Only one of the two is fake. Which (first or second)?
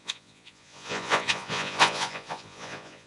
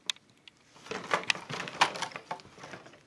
first